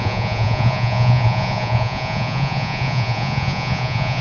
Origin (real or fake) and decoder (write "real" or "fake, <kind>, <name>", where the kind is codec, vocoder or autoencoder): fake, vocoder, Vocos